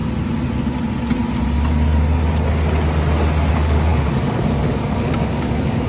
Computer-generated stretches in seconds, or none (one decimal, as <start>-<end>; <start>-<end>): 3.5-5.9